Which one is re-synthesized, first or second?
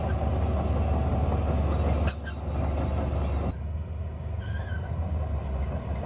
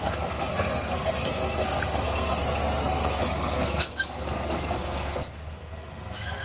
second